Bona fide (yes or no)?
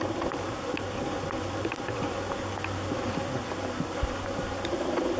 yes